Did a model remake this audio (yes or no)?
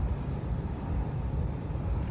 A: yes